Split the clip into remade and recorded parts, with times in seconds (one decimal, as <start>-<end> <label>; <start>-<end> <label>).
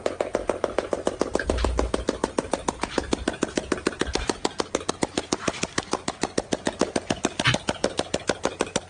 0.0-4.4 remade; 4.4-4.9 recorded; 4.9-8.9 remade